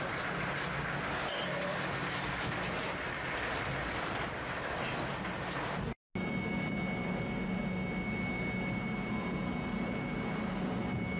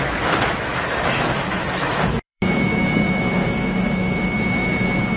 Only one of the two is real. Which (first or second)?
first